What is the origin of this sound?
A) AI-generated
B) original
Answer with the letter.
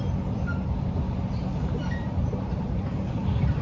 A